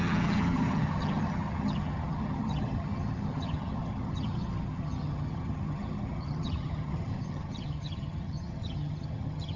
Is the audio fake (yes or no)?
yes